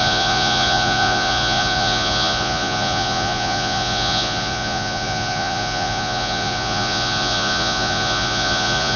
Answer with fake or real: fake